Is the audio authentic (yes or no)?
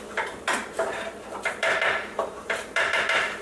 no